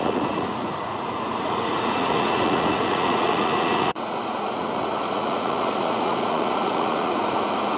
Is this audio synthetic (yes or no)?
yes